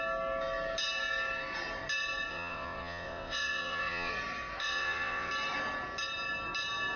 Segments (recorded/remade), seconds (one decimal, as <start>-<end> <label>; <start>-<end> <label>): 0.0-2.3 recorded; 2.3-4.1 remade; 4.1-4.6 recorded; 4.6-5.3 remade; 5.3-7.0 recorded